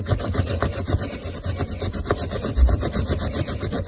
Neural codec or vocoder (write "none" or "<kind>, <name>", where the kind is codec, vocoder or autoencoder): none